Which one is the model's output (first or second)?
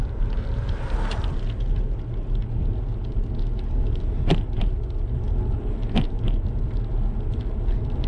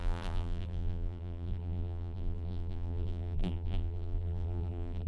second